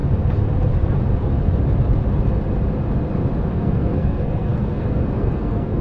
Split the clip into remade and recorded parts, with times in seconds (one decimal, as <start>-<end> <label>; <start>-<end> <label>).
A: 0.0-3.5 recorded; 3.5-5.8 remade